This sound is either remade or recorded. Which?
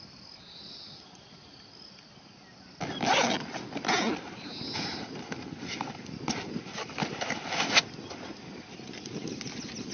recorded